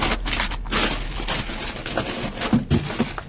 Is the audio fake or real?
real